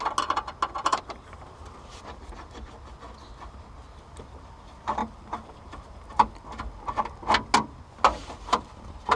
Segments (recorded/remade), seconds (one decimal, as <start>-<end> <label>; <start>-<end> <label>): 0.0-0.9 recorded; 0.9-1.8 remade; 1.8-5.0 recorded; 5.0-6.3 remade; 6.3-8.2 recorded; 8.2-9.2 remade